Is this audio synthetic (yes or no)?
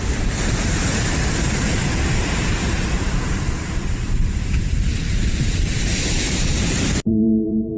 yes